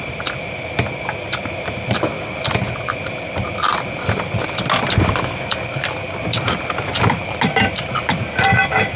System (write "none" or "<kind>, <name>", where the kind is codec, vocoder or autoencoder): none